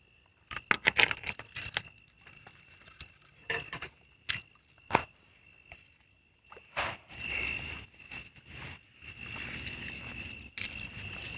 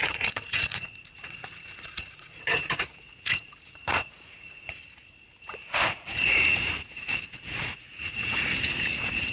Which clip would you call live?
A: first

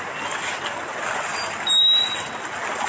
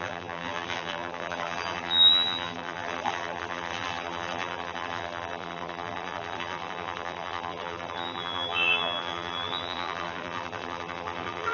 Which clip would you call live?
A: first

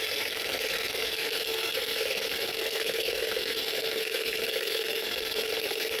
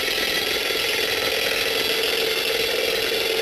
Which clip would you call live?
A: second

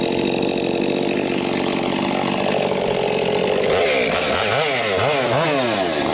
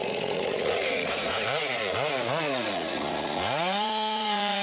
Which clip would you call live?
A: first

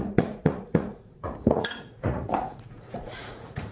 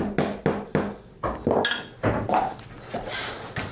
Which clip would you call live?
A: second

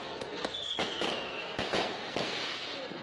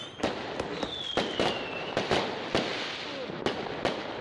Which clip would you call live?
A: second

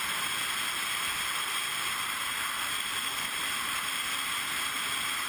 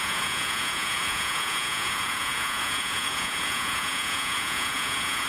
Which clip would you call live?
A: first